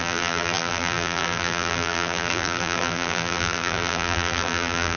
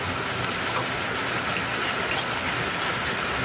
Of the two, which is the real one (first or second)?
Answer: second